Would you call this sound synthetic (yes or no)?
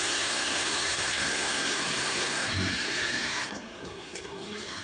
yes